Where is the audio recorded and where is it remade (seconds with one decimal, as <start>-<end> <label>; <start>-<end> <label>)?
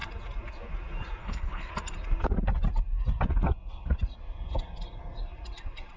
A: 0.0-1.2 recorded; 1.2-1.7 remade; 1.7-6.0 recorded